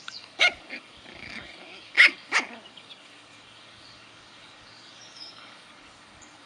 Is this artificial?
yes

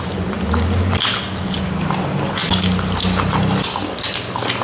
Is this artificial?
no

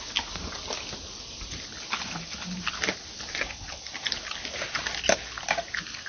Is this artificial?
no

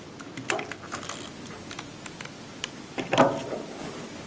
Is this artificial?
no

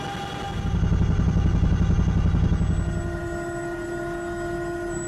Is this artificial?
no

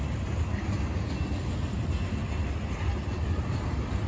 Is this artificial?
no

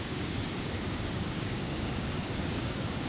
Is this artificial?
yes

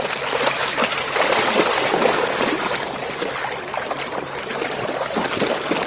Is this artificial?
no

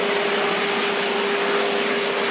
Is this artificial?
no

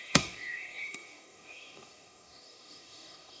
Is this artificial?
yes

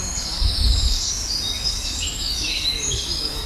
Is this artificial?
yes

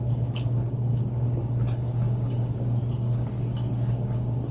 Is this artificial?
yes